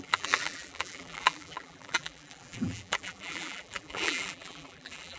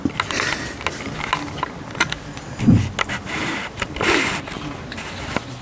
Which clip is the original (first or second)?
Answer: second